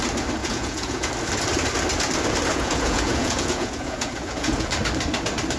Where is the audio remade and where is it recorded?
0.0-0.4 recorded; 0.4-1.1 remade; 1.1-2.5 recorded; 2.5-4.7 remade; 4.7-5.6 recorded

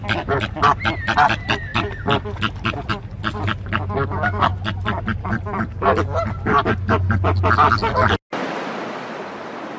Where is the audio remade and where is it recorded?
0.0-9.8 recorded

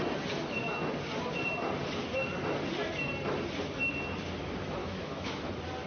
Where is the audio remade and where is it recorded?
0.0-4.8 recorded; 4.8-5.5 remade; 5.5-5.9 recorded

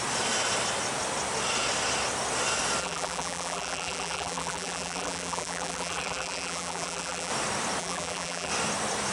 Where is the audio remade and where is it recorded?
0.0-2.8 recorded; 2.8-7.3 remade; 7.3-7.8 recorded; 7.8-8.5 remade; 8.5-9.1 recorded

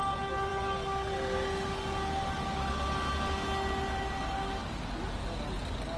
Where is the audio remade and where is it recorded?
0.0-6.0 recorded

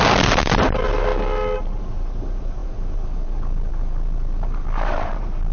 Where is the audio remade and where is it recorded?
0.0-1.1 remade; 1.1-1.8 recorded; 1.8-5.5 remade